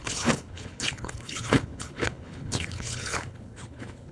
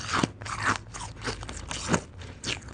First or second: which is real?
second